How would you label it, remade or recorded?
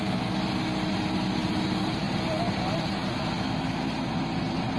recorded